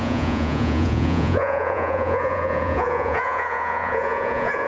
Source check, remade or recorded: remade